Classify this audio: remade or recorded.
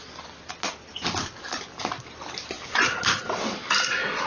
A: recorded